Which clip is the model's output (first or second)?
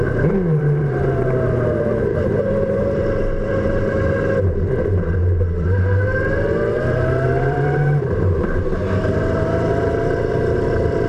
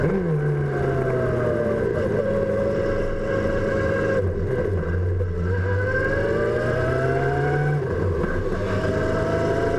first